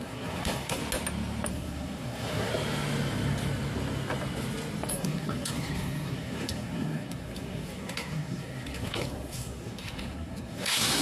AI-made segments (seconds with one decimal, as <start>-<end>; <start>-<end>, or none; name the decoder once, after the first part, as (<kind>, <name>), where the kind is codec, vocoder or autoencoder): 0.0-0.8 (codec, SNAC); 1.5-2.5; 4.9-11.0